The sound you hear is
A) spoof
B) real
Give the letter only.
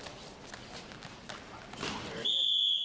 B